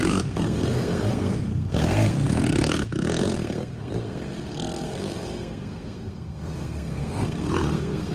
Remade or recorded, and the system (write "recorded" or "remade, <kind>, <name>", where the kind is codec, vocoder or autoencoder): remade, codec, SNAC